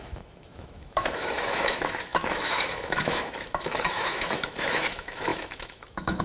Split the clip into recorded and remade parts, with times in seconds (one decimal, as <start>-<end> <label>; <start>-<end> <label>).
0.0-6.2 remade